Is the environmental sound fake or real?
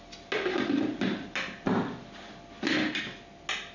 real